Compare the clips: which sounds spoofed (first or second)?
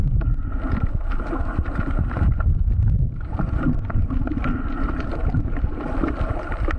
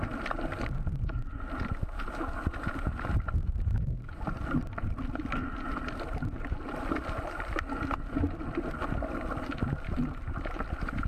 first